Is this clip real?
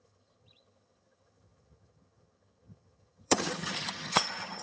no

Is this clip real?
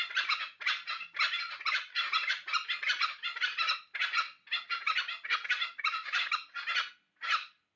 yes